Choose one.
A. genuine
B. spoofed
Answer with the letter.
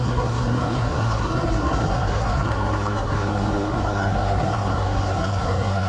B